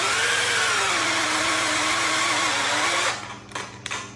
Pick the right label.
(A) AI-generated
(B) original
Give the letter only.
B